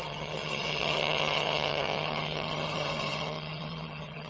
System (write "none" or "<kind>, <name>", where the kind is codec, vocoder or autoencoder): vocoder, HiFi-GAN